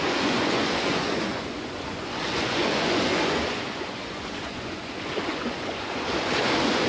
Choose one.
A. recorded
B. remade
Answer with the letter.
B